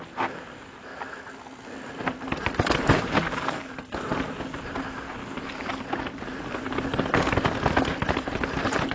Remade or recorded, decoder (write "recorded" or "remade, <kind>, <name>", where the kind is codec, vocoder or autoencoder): recorded